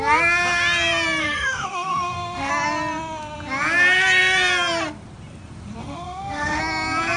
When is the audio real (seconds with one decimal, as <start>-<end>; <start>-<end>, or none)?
0.0-1.2; 2.5-5.8; 6.6-7.2